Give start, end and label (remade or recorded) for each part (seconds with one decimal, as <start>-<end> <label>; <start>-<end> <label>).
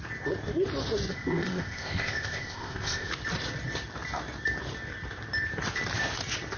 0.0-1.1 recorded; 1.1-3.1 remade; 3.1-6.6 recorded